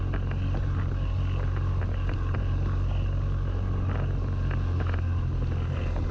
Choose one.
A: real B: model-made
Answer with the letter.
A